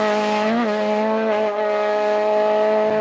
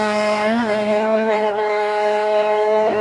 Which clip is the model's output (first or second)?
second